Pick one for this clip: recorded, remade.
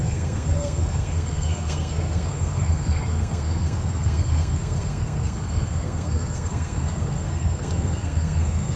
remade